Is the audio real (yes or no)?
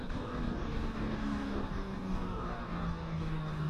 no